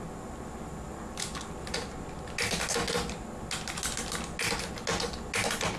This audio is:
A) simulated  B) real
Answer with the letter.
B